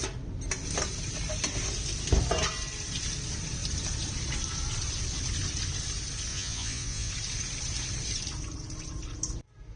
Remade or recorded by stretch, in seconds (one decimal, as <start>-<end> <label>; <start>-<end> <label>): 0.0-6.3 recorded; 6.3-7.1 remade; 7.1-9.8 recorded